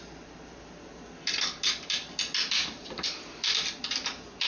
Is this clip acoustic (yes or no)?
yes